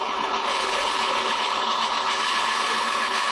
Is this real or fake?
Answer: fake